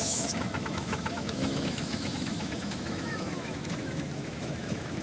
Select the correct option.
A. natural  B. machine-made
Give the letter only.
B